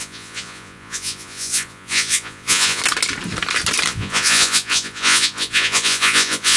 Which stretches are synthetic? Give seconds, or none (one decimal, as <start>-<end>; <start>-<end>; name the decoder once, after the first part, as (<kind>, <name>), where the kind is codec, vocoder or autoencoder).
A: 0.0-2.8 (vocoder, Vocos); 3.9-6.6